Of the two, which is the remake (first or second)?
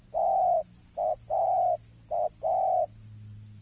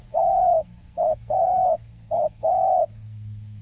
second